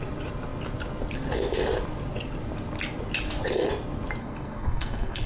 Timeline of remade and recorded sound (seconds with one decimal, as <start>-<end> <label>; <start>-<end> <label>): 0.0-4.2 recorded; 4.2-5.3 remade